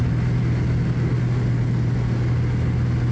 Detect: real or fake real